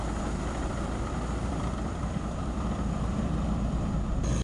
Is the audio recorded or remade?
remade